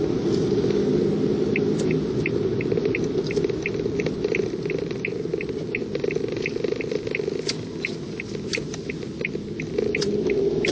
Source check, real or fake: real